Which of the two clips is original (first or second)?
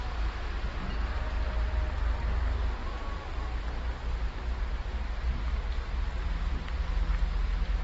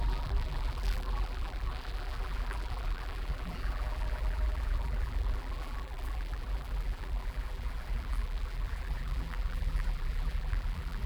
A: first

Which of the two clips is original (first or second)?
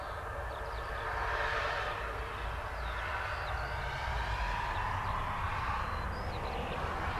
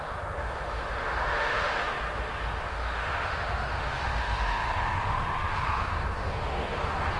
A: first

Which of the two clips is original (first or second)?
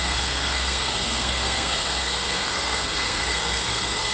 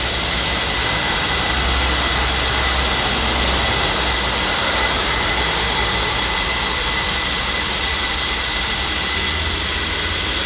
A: second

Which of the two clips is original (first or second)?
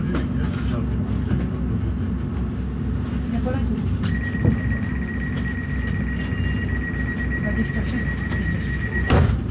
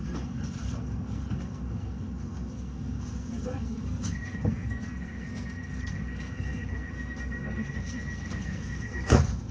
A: first